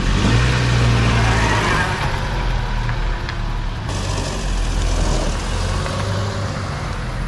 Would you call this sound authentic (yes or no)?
yes